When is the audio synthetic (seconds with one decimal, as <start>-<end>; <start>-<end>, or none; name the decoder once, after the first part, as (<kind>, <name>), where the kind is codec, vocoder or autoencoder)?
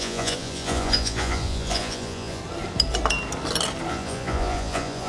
0.0-2.4 (vocoder, Vocos); 3.9-5.1